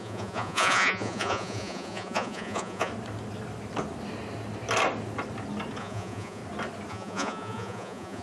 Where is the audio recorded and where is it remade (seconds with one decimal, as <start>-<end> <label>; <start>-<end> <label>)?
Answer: 0.0-2.9 remade; 2.9-5.8 recorded; 5.8-6.4 remade; 6.4-6.9 recorded; 6.9-8.2 remade